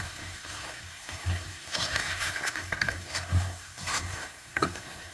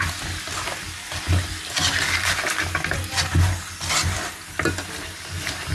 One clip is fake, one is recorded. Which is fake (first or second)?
first